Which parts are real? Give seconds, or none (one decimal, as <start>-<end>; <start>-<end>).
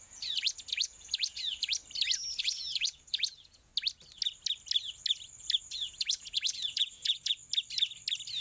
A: 1.8-2.4; 3.7-5.6; 7.4-8.4